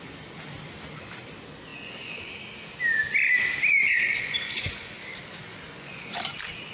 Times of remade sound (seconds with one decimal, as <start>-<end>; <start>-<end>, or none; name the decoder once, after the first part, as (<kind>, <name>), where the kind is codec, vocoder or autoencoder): 1.7-2.3 (vocoder, Vocos); 3.7-4.8; 5.5-6.2

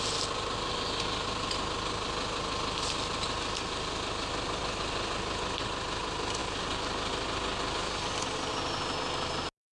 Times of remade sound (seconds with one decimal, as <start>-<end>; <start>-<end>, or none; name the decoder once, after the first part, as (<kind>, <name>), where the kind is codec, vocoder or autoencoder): none